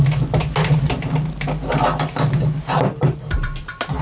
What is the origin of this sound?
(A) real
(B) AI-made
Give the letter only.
A